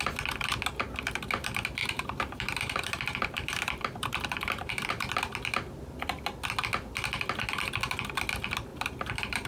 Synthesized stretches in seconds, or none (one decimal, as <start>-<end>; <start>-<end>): 1.8-4.9; 8.7-9.5

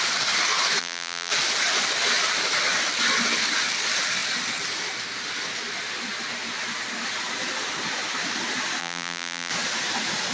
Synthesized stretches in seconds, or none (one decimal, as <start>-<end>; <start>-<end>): 0.8-1.3; 8.8-9.5

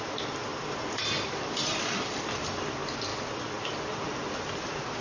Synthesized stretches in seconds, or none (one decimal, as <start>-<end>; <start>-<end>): 0.5-2.6

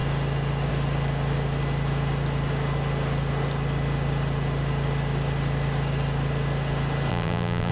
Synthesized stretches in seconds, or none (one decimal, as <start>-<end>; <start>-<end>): 7.1-7.7

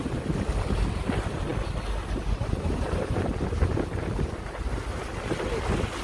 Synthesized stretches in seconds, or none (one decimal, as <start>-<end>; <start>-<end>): none

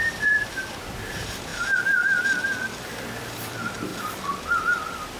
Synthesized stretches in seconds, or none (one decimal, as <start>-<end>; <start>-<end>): 0.0-5.2

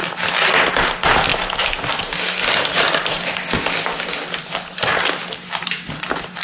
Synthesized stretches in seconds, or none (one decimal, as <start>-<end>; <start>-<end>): none

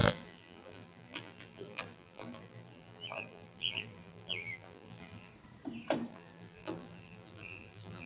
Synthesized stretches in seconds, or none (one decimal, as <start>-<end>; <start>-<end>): 0.0-5.3; 6.1-8.1